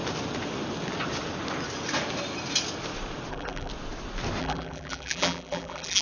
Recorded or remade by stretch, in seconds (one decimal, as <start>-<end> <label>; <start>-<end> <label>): 0.0-3.3 recorded; 3.3-3.7 remade; 3.7-4.4 recorded; 4.4-6.0 remade